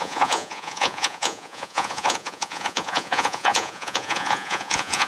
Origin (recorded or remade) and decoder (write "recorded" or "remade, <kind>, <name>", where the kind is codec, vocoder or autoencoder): remade, vocoder, Vocos